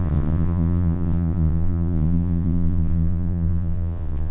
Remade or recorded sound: remade